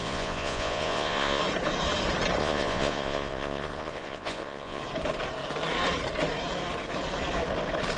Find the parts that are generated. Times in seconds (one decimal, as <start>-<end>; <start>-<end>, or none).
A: 0.0-1.4; 2.4-4.8